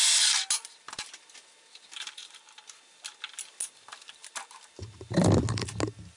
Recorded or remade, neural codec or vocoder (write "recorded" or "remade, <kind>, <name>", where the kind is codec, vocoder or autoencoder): recorded